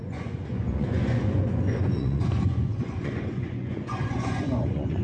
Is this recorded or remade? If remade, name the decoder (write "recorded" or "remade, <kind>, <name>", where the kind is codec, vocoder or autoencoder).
remade, vocoder, Vocos